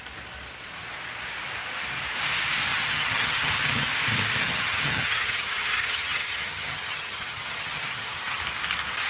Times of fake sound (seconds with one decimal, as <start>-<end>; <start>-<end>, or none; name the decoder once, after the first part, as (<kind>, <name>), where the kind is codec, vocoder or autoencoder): 2.7-3.5 (vocoder, HiFi-GAN); 4.4-8.4